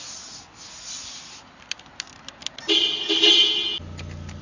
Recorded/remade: recorded